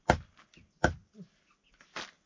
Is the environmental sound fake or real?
real